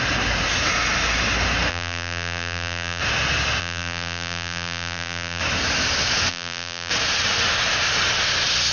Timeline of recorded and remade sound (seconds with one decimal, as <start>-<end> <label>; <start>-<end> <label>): 0.0-1.7 recorded; 1.7-3.0 remade; 3.0-3.6 recorded; 3.6-5.4 remade; 5.4-6.3 recorded; 6.3-6.9 remade; 6.9-8.7 recorded